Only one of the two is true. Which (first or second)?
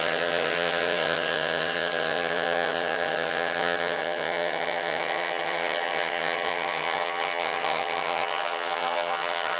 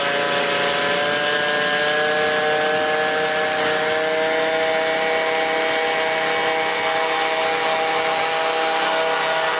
second